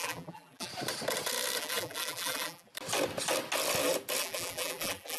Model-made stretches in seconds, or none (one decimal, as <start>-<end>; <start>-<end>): 0.0-0.7; 1.6-2.7; 4.2-5.2